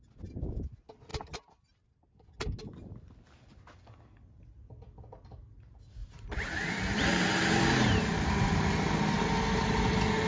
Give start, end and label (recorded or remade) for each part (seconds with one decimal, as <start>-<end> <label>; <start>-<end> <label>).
0.0-6.0 recorded; 6.0-8.6 remade; 8.6-10.3 recorded